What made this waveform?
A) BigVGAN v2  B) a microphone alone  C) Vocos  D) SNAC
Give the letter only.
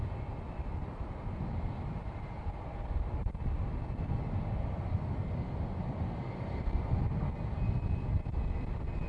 B